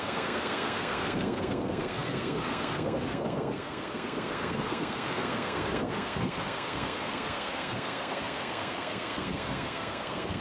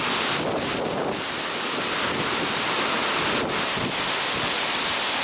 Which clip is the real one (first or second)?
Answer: second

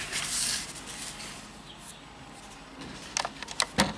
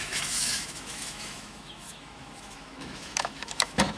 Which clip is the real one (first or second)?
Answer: first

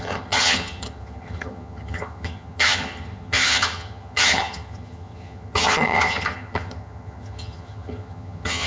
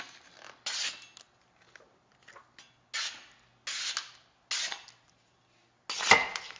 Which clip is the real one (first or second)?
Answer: second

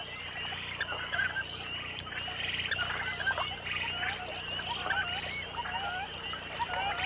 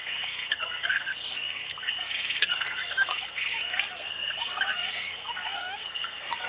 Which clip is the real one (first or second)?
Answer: first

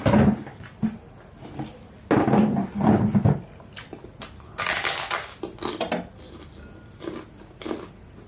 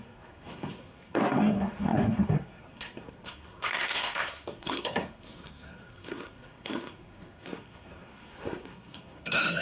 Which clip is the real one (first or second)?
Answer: first